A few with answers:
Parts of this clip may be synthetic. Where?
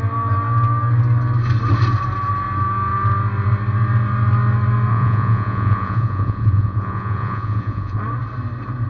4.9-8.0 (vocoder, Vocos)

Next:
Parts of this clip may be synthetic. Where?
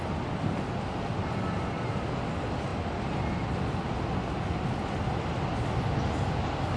none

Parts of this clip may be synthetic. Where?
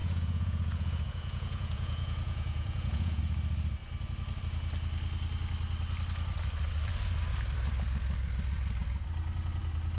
0.0-3.2 (vocoder, Vocos)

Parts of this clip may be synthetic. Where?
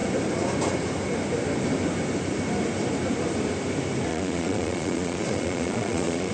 4.1-6.3 (vocoder, Vocos)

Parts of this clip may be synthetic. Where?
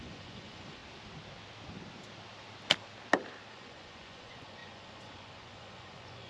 0.0-0.8 (vocoder, Vocos); 3.5-6.3